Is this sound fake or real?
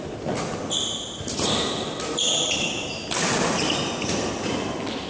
real